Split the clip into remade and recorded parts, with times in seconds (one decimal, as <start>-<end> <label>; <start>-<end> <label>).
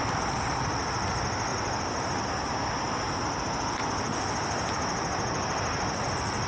0.0-1.5 recorded; 1.5-2.6 remade; 2.6-6.5 recorded